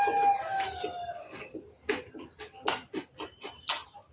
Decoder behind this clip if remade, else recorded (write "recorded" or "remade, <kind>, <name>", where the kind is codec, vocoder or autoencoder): recorded